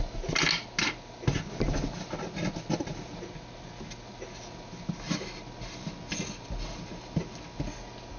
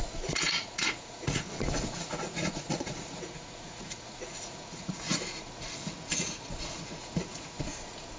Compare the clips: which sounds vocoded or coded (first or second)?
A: second